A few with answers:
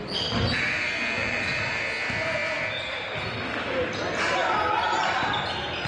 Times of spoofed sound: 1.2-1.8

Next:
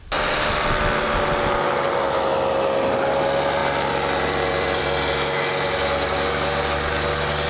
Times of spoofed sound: 3.6-4.8

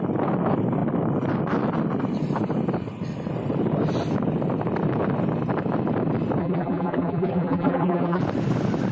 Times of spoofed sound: 6.4-8.2

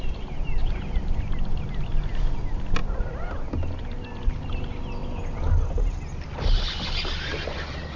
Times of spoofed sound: 0.6-1.2; 2.8-4.5